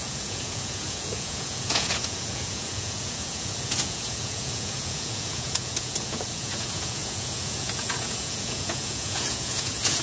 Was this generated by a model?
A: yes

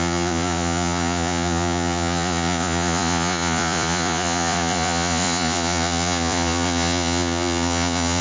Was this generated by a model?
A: yes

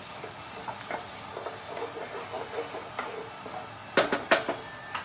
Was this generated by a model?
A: no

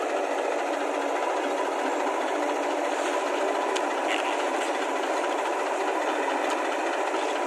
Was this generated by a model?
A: no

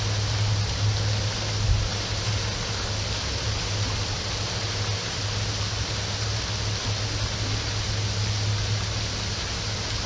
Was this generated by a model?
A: no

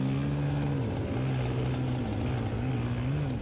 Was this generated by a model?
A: no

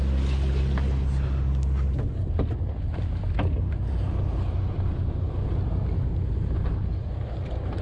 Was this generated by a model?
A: no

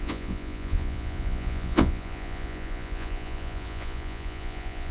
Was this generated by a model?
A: yes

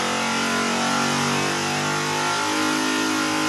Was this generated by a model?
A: no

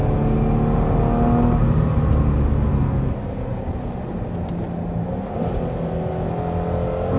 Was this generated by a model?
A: no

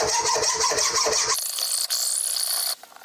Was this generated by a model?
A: no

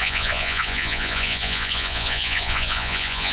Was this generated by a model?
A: yes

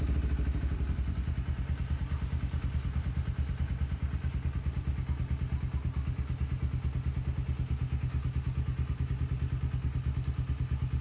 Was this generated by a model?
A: no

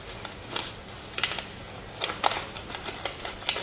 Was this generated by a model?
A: no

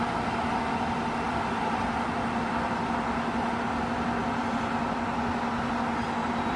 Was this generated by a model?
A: no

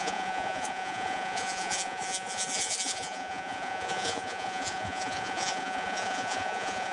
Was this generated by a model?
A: yes